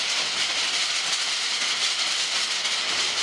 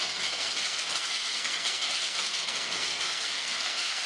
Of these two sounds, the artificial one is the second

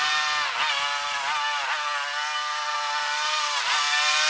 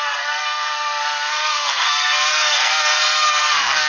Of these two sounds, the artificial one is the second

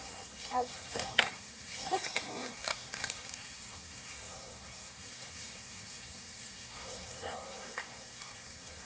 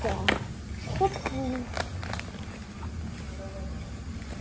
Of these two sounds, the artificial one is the first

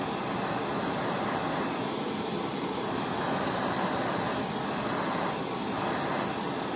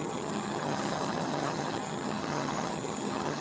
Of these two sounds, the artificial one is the second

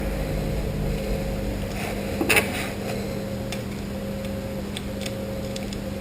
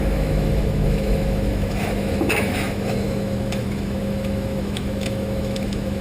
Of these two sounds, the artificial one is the second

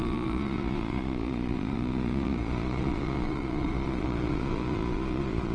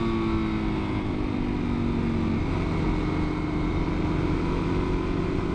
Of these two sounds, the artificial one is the first